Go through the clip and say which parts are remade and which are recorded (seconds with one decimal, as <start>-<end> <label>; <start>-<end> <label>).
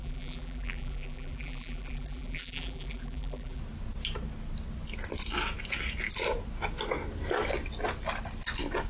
0.0-3.6 remade; 3.6-8.9 recorded